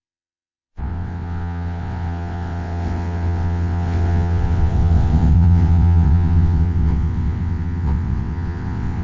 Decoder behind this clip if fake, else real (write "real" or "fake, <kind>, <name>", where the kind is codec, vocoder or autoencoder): fake, vocoder, WaveNeXt